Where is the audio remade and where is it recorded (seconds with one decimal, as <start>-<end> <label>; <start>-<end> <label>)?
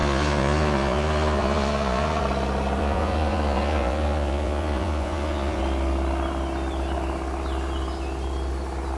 0.0-2.2 remade; 2.2-2.8 recorded; 2.8-5.6 remade; 5.6-9.0 recorded